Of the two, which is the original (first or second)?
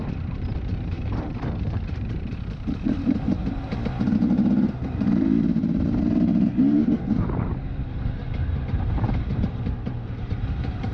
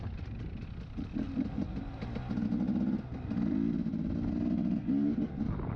second